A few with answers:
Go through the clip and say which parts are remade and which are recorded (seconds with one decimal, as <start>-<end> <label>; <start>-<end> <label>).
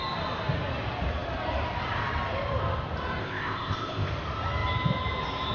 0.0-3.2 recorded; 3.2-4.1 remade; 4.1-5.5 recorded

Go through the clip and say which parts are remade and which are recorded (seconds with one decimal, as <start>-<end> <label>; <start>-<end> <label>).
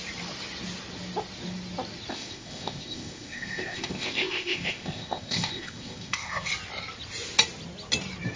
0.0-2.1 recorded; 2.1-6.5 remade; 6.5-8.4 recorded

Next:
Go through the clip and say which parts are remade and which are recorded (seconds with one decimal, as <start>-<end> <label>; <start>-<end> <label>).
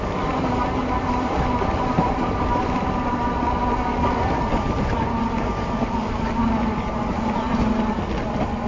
0.0-8.7 recorded